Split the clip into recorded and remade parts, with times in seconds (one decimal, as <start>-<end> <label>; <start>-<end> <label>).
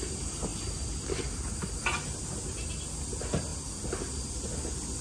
0.0-5.0 recorded